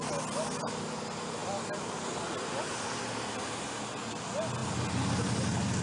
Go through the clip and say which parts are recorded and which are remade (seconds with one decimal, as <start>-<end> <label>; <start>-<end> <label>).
0.0-5.8 recorded